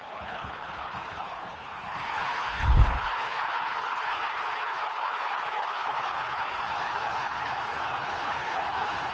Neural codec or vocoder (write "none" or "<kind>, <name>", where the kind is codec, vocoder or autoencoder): codec, HILCodec